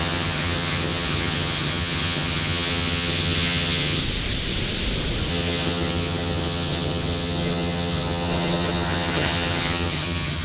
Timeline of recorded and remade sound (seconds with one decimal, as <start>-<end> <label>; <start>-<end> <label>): 0.0-4.0 remade; 4.0-5.3 recorded; 5.3-10.4 remade